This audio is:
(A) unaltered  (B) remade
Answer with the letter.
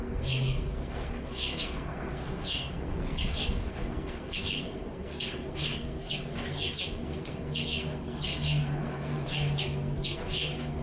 B